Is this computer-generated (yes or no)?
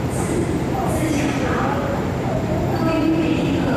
yes